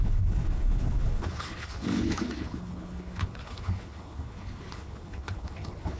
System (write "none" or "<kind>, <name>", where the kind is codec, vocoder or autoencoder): codec, HILCodec